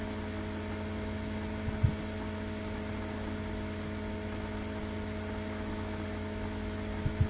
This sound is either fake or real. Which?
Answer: real